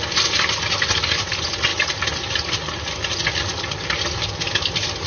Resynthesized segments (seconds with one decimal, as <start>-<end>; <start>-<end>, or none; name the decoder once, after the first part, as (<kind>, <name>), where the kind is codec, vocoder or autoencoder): 1.7-4.2 (vocoder, BigVGAN v2)